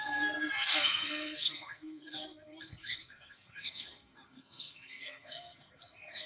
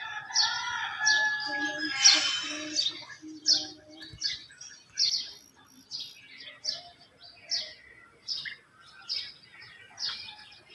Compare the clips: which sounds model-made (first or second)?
first